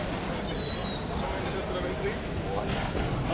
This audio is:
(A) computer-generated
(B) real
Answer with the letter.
B